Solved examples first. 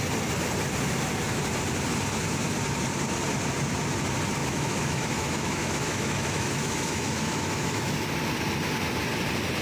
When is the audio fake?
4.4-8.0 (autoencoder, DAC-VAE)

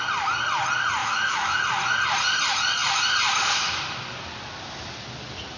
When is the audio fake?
1.0-1.6 (autoencoder, DAC-VAE)

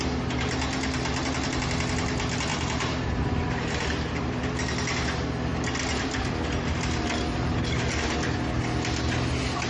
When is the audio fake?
2.5-4.4 (vocoder, BigVGAN v2)

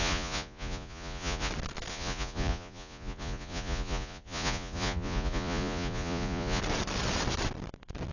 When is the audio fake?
0.0-1.5 (vocoder, Vocos); 1.9-6.6

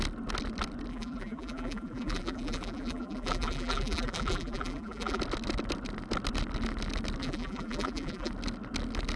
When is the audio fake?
0.9-5.2 (vocoder, BigVGAN v2); 7.2-8.3

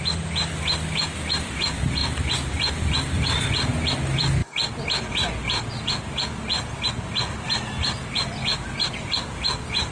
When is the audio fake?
2.0-3.8 (vocoder, BigVGAN v2)